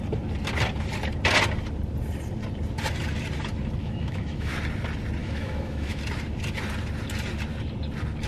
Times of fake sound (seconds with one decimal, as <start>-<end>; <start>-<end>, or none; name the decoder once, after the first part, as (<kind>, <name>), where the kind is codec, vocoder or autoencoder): 3.8-4.5 (autoencoder, DAC-VAE); 5.2-6.0